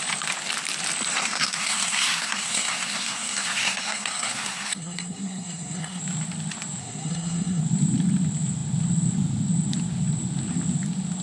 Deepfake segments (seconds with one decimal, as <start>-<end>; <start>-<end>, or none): 1.1-6.0; 6.8-7.6